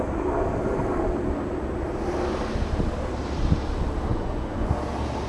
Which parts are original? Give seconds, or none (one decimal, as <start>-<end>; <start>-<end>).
0.0-4.1; 4.7-5.3